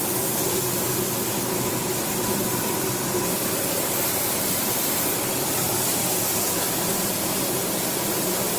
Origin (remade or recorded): recorded